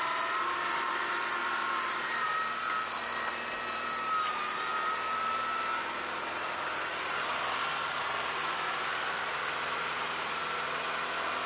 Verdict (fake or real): fake